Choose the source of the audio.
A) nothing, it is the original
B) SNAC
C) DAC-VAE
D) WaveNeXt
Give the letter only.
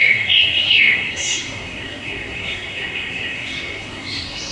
B